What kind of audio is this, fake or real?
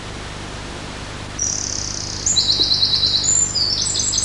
real